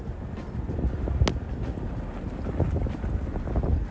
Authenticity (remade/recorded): recorded